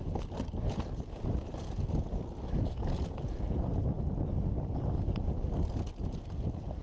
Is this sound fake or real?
real